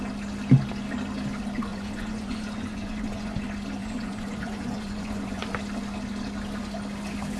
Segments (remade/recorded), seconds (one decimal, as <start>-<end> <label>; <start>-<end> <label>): 0.0-1.7 recorded; 1.7-3.4 remade; 3.4-3.8 recorded; 3.8-5.5 remade; 5.5-7.4 recorded